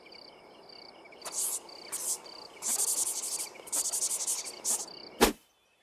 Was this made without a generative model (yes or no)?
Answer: yes